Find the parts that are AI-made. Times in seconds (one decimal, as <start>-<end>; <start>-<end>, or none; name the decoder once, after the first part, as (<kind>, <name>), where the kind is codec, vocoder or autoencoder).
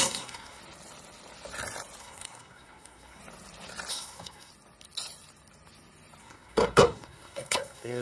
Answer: 0.0-0.6 (codec, SNAC); 2.0-3.2; 3.9-4.5; 6.2-8.0